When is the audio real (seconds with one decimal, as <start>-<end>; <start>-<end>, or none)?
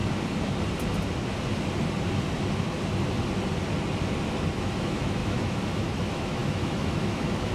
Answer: 0.0-4.5